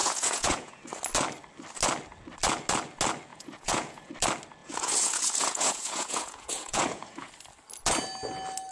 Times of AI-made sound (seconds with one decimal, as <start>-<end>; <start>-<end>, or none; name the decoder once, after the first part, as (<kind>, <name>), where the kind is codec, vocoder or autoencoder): 0.0-0.8 (vocoder, Vocos); 3.3-4.1; 4.6-7.3